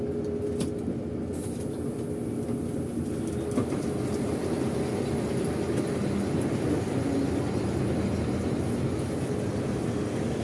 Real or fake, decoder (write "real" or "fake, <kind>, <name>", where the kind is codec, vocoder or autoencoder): real